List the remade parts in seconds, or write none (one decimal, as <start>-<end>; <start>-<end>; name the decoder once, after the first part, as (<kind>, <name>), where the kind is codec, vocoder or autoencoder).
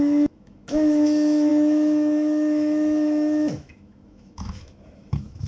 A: 0.0-5.5 (autoencoder, DAC-VAE)